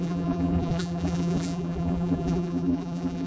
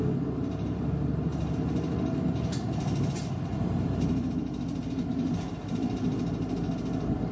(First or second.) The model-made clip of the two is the first